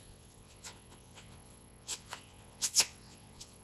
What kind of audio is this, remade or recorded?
remade